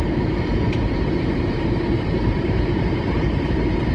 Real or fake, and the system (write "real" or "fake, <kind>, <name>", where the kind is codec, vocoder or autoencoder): fake, vocoder, BigVGAN v2